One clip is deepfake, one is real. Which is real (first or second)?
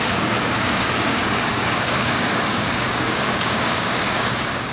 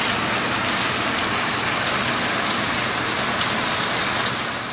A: second